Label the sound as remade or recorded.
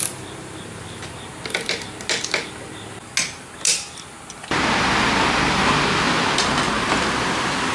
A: recorded